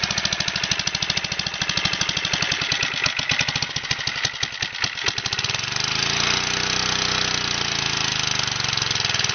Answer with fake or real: real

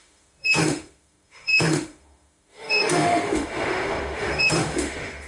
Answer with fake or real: fake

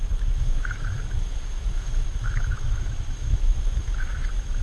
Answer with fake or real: fake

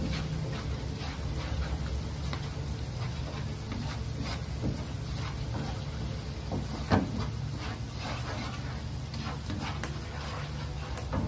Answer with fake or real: real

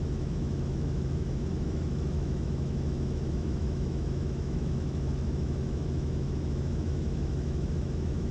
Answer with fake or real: fake